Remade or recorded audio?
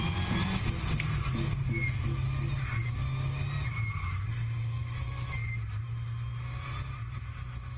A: recorded